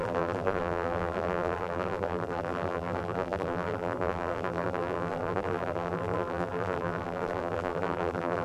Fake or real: fake